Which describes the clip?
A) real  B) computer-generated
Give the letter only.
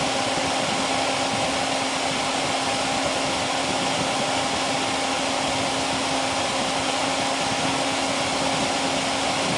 A